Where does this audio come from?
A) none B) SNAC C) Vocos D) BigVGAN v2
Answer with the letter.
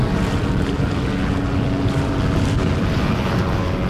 A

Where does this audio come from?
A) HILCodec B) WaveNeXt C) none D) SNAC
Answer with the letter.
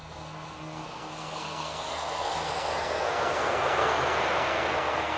D